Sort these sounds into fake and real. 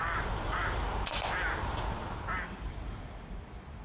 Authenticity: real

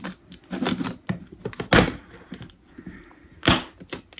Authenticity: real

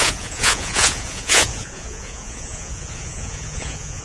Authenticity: fake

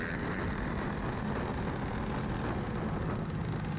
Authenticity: real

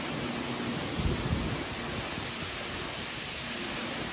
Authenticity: real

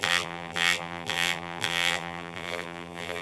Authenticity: fake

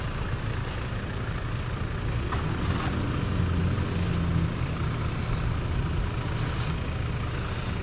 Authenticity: real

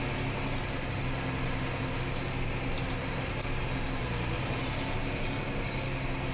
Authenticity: real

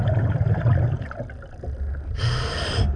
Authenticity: real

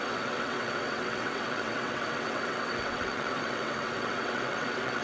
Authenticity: fake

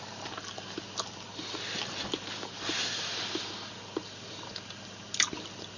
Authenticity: real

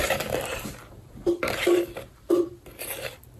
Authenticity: fake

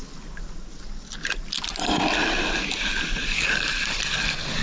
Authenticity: real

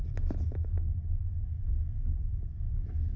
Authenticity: real